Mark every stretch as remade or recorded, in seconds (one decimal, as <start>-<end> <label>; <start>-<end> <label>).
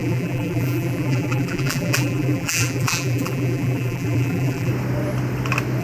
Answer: 0.0-4.7 remade; 4.7-5.8 recorded